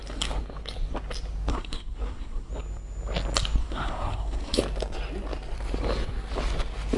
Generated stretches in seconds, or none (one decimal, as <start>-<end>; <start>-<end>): 1.5-2.5; 3.6-4.6